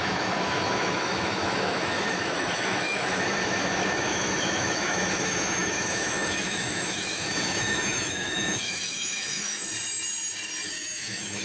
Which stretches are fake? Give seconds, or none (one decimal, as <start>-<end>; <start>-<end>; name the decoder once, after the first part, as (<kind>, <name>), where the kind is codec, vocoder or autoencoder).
0.0-9.6 (autoencoder, DAC-VAE); 10.7-11.4